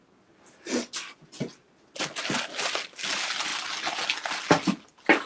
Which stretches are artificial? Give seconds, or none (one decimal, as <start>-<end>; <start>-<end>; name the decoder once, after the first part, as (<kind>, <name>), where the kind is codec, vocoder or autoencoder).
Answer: none